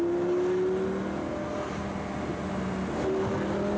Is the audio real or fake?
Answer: real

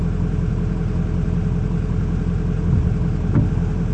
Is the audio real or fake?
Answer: real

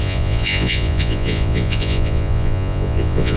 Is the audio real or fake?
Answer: fake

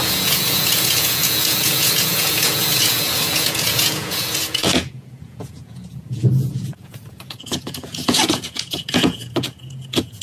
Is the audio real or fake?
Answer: fake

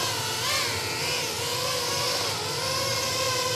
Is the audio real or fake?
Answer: real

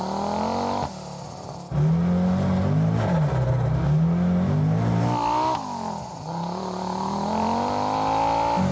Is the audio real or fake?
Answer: real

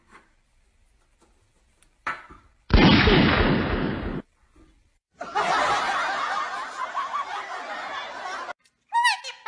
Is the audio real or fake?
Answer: real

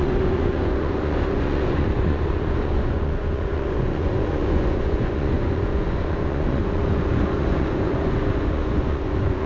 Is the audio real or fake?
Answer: fake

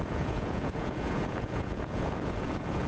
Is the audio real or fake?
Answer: fake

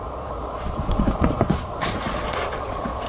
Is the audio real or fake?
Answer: fake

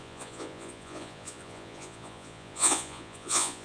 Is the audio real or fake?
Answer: fake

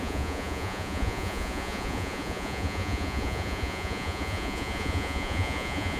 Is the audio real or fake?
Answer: fake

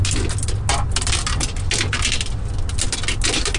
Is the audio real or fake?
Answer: real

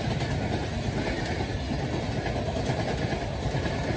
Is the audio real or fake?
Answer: real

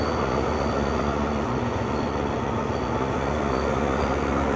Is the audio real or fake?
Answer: fake